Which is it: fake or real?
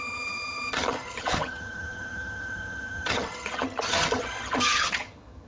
fake